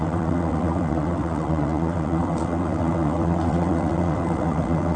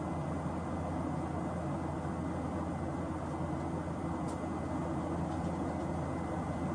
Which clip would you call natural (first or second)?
second